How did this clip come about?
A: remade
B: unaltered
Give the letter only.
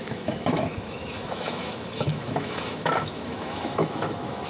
A